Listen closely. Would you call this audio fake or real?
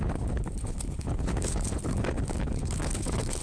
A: fake